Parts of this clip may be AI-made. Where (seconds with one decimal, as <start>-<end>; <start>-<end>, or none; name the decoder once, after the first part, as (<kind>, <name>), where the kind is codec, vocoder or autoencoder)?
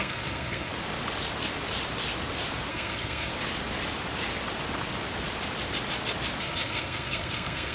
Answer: 0.0-0.7 (codec, SNAC); 2.7-3.3; 6.4-7.7